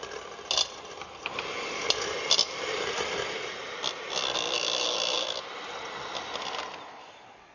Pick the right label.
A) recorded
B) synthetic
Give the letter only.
A